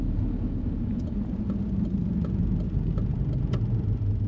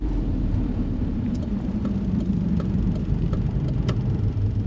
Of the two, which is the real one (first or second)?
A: first